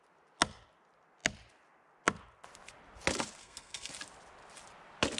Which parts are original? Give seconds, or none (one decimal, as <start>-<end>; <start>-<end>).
0.0-3.4; 3.9-5.2